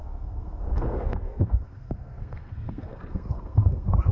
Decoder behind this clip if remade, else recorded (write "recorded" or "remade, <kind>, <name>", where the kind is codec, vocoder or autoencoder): remade, codec, SNAC